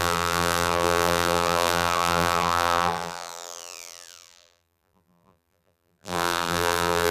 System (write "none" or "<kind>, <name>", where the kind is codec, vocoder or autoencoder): vocoder, BigVGAN v2